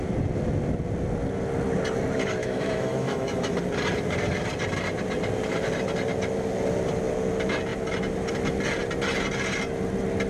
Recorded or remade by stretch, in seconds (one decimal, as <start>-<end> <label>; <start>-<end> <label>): 0.0-2.4 recorded; 2.4-3.6 remade; 3.6-10.3 recorded